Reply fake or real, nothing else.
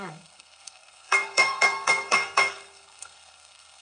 fake